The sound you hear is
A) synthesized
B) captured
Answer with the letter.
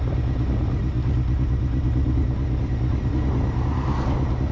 B